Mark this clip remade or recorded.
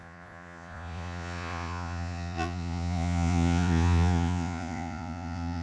remade